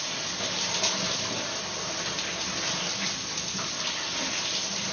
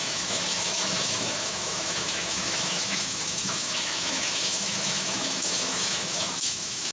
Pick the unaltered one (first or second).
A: first